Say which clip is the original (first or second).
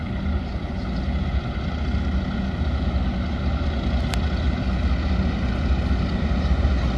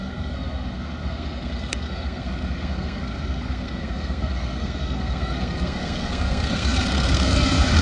first